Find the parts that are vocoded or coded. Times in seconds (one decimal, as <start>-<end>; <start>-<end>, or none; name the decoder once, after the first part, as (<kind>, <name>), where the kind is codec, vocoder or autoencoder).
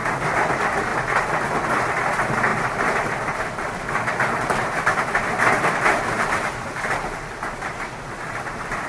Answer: 0.5-0.9 (vocoder, BigVGAN v2); 1.9-8.9